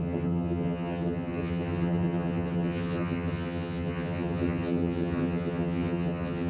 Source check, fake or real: fake